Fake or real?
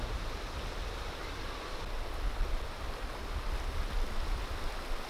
real